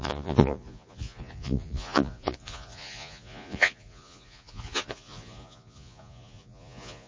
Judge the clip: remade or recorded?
remade